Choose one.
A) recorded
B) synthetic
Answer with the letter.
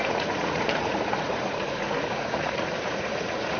B